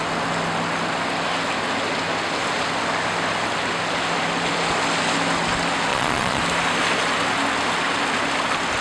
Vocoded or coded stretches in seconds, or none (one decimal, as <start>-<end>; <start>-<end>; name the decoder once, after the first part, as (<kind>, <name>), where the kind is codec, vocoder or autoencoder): 5.9-6.4 (vocoder, Vocos)